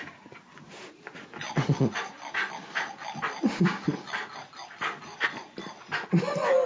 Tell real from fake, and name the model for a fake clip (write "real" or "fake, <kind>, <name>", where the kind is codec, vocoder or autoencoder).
real